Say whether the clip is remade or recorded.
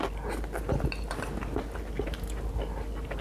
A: recorded